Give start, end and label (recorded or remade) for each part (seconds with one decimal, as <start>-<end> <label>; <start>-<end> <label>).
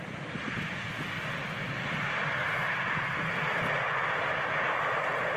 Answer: 0.0-5.4 recorded